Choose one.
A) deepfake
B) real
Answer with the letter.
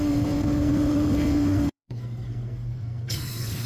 A